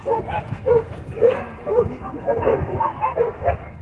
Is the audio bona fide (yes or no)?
no